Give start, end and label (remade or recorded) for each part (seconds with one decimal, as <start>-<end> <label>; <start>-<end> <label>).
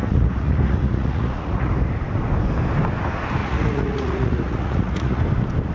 0.0-1.7 remade; 1.7-3.4 recorded; 3.4-5.2 remade; 5.2-5.7 recorded